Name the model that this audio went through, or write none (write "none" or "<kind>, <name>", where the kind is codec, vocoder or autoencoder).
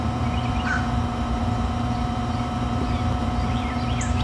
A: vocoder, BigVGAN v2